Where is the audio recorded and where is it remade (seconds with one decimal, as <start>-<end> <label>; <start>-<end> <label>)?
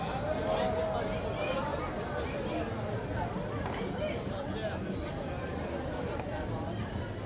0.0-7.3 recorded